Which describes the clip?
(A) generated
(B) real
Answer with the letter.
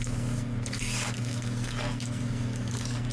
A